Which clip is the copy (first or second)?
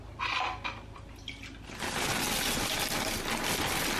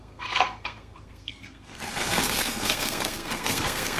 second